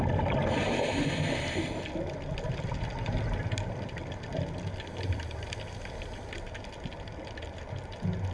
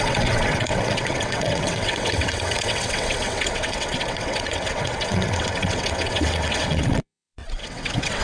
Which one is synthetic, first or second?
second